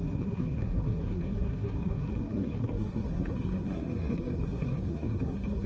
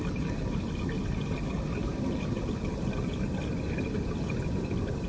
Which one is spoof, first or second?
first